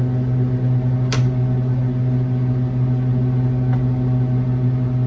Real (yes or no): yes